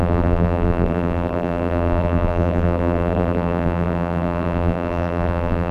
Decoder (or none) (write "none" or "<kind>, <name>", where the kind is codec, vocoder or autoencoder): vocoder, BigVGAN v2